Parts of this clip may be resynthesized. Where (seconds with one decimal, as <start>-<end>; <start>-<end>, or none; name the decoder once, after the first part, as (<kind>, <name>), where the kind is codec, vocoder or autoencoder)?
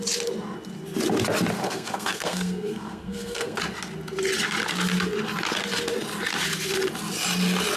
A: 1.6-3.6 (codec, SNAC)